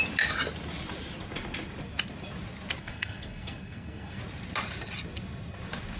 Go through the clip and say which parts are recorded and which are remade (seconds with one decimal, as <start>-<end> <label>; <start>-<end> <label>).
0.0-2.8 recorded; 2.8-4.2 remade; 4.2-6.0 recorded